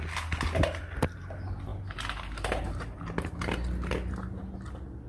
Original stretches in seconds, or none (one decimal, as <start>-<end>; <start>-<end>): 0.0-5.1